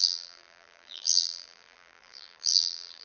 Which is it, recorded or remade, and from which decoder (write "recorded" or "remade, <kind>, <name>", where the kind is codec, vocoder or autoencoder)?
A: remade, vocoder, BigVGAN v2